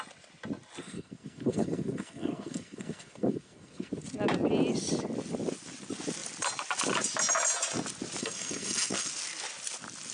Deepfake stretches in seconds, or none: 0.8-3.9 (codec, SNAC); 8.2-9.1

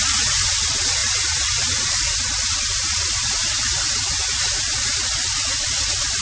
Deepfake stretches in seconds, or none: none

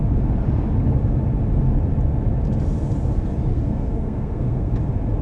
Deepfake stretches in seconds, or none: 3.5-4.7 (codec, SNAC)

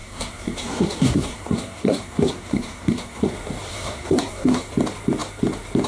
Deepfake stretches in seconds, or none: 0.0-3.3 (codec, SNAC); 3.7-4.7

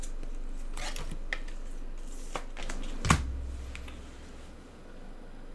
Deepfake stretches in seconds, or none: none